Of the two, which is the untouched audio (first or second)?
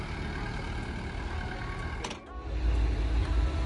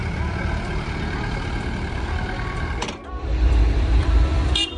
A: first